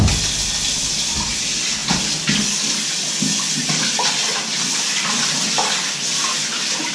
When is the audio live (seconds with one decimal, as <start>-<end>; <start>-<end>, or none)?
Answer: 0.0-6.9